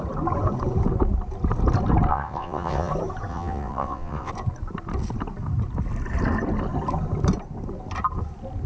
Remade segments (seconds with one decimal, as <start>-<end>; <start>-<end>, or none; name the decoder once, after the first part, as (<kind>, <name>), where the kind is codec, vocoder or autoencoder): 2.1-2.9 (vocoder, WaveNeXt); 3.3-4.3